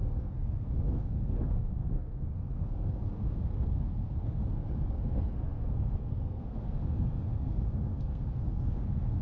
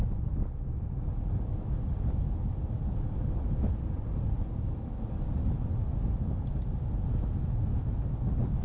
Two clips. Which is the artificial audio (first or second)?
first